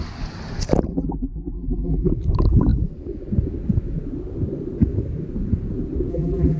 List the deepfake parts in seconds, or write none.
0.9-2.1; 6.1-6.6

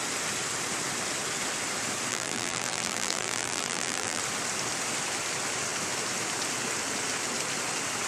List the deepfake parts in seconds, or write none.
2.1-4.2

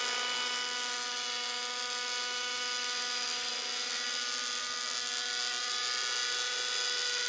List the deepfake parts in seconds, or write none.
none

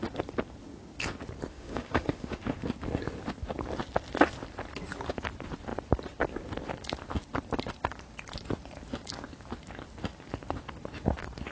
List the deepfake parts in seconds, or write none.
1.5-2.4

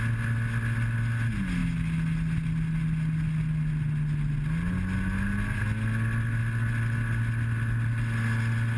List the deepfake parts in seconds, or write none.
none

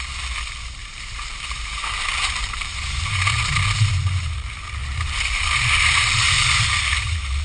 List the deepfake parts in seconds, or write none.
0.8-3.4; 4.8-6.7

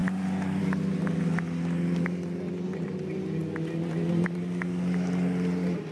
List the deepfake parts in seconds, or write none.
none